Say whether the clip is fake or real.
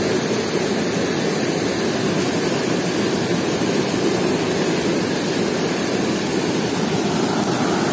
real